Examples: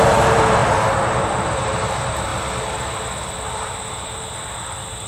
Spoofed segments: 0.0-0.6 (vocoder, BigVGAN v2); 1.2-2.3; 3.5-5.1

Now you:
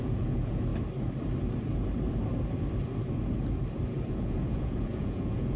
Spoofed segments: 0.0-0.7 (vocoder, Vocos); 4.1-5.6